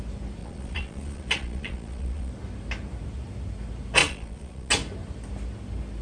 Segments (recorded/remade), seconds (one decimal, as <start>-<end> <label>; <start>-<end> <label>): 0.0-0.4 recorded; 0.4-2.3 remade; 2.3-4.0 recorded; 4.0-4.7 remade; 4.7-6.0 recorded